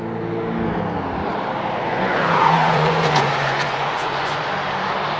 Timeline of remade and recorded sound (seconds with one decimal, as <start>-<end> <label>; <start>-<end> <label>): 0.0-1.8 recorded; 1.8-4.4 remade; 4.4-5.2 recorded